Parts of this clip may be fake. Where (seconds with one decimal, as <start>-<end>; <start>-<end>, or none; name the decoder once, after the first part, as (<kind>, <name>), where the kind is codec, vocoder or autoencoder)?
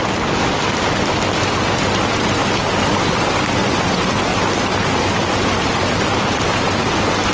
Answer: 4.3-6.5 (vocoder, BigVGAN v2)